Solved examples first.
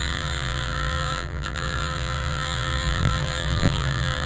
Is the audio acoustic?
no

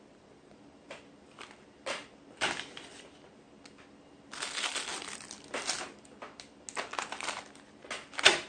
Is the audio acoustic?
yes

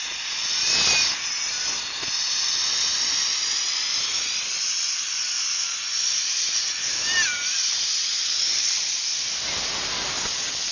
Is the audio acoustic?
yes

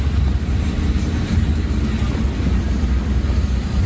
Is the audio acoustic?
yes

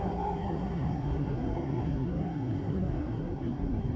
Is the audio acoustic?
no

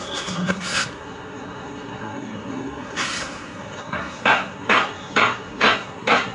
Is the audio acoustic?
no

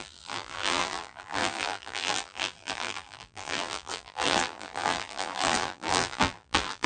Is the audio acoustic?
no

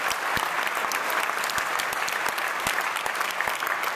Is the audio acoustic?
yes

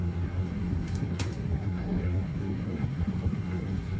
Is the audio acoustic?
no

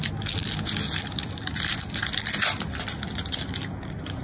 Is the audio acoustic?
yes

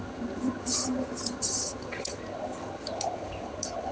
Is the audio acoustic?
no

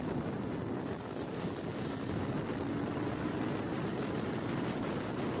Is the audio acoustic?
yes